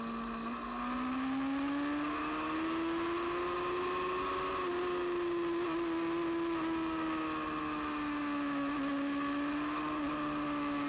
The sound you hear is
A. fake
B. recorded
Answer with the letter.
B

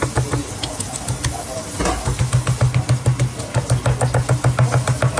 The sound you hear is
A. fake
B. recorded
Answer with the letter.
B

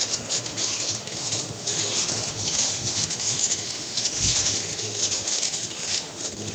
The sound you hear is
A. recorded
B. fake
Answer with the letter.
B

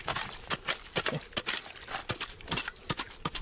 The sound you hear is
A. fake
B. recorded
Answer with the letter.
B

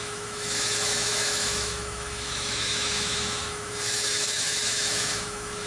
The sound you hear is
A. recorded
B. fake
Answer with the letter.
B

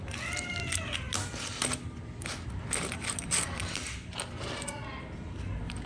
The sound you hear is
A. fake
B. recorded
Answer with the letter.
B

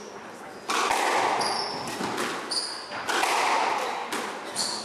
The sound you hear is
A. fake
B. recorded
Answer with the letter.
B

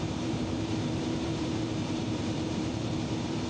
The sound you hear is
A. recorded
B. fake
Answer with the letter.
B